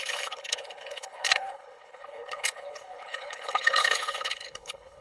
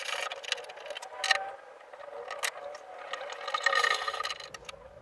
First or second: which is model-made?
first